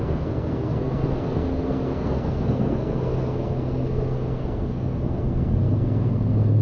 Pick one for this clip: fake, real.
fake